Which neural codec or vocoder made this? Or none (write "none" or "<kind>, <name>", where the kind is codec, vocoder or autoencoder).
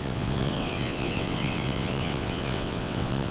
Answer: vocoder, WaveNeXt